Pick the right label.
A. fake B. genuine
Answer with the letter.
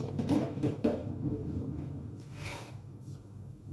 A